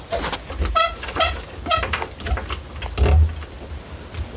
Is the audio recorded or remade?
recorded